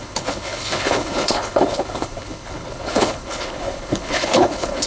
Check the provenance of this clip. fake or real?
fake